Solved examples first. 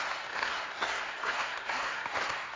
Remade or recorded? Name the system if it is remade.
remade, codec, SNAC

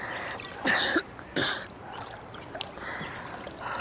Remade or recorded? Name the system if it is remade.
recorded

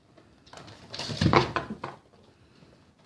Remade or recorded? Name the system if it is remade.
recorded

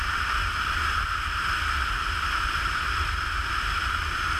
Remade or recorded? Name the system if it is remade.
recorded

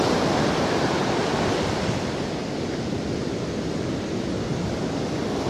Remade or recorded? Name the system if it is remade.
recorded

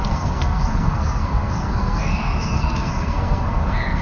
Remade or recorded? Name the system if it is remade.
remade, codec, SNAC